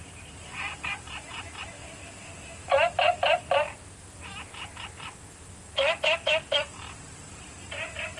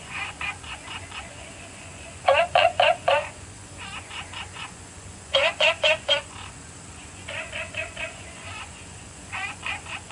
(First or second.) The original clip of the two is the first